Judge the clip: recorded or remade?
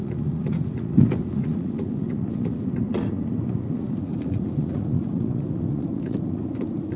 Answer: remade